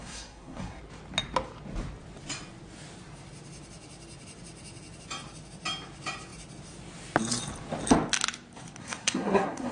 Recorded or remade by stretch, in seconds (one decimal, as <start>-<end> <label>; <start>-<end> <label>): 0.0-0.8 remade; 0.8-8.8 recorded; 8.8-9.7 remade